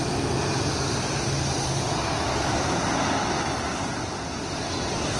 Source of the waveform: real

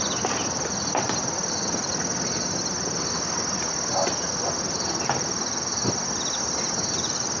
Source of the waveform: real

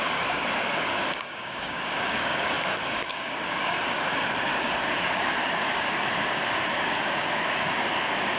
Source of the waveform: fake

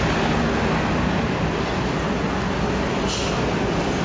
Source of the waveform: real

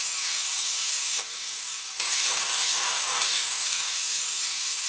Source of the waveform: fake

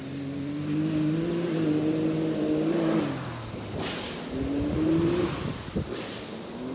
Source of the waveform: real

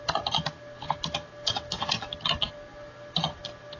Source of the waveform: real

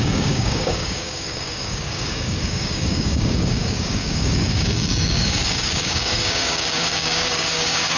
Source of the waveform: fake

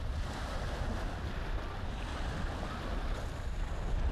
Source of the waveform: real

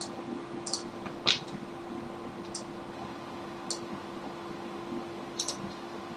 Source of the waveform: real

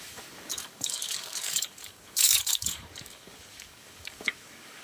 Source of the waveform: fake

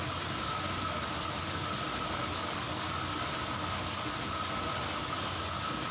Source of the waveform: real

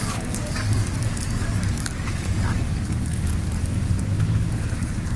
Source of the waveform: fake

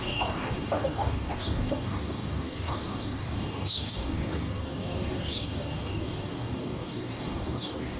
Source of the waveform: fake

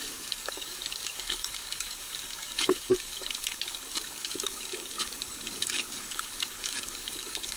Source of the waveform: fake